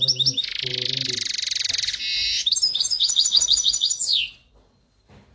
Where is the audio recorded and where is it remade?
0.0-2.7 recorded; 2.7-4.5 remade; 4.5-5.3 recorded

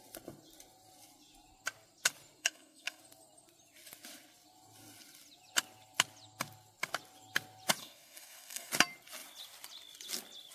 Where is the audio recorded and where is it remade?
0.0-2.4 recorded; 2.4-3.0 remade; 3.0-7.8 recorded; 7.8-8.7 remade; 8.7-10.5 recorded

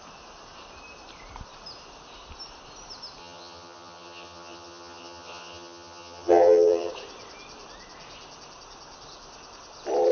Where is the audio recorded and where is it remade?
0.0-3.2 recorded; 3.2-6.9 remade; 6.9-10.1 recorded

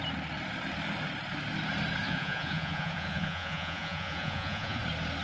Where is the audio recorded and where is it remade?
0.0-2.0 recorded; 2.0-4.8 remade; 4.8-5.2 recorded

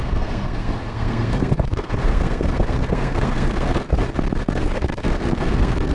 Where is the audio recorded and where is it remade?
0.0-4.0 remade; 4.0-4.5 recorded; 4.5-5.9 remade